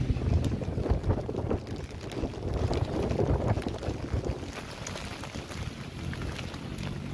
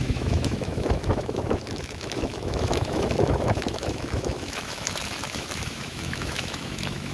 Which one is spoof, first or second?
second